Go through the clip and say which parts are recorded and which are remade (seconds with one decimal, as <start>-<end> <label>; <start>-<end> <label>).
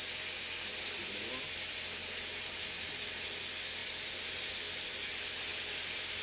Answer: 0.0-2.0 recorded; 2.0-2.9 remade; 2.9-3.8 recorded; 3.8-4.5 remade; 4.5-6.2 recorded